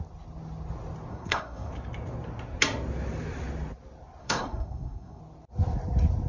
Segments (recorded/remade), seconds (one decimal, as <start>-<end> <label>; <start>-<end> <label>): 0.0-1.1 recorded; 1.1-1.7 remade; 1.7-4.2 recorded; 4.2-5.2 remade; 5.2-6.3 recorded